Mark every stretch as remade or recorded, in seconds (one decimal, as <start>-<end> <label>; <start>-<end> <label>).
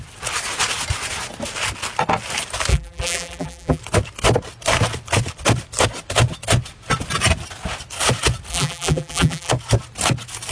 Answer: 0.0-2.7 recorded; 2.7-3.8 remade; 3.8-8.5 recorded; 8.5-9.5 remade; 9.5-10.5 recorded